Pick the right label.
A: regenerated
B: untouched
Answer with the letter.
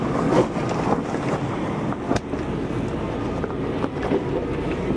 B